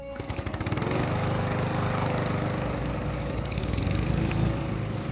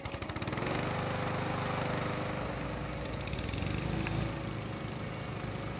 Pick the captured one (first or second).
second